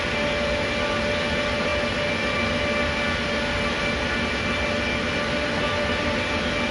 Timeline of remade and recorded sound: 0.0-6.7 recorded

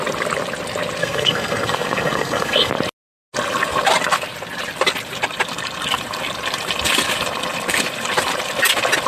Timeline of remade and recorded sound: 0.0-1.0 recorded; 1.0-2.7 remade; 2.7-9.1 recorded

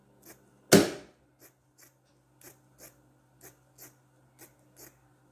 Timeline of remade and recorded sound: 0.0-5.3 recorded

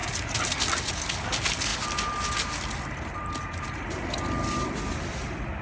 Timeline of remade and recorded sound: 0.0-5.6 recorded

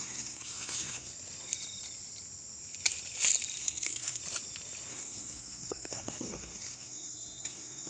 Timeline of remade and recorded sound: 0.0-1.1 remade; 1.1-3.6 recorded; 3.6-4.2 remade; 4.2-4.9 recorded; 4.9-7.9 remade